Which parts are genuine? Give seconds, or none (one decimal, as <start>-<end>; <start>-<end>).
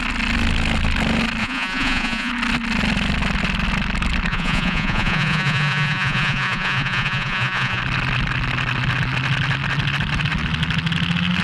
0.0-1.4; 2.3-4.3; 7.8-11.4